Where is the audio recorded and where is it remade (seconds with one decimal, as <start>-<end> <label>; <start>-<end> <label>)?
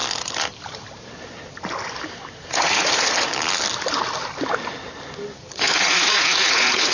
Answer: 0.0-2.5 recorded; 2.5-3.3 remade; 3.3-5.5 recorded; 5.5-6.9 remade